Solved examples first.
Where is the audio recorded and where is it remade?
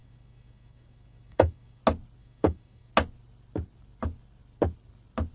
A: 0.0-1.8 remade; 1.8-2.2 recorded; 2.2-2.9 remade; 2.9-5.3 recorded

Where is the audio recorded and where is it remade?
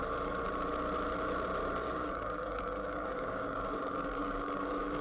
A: 0.0-1.8 recorded; 1.8-5.0 remade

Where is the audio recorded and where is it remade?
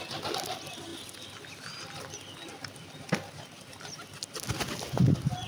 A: 0.0-5.5 recorded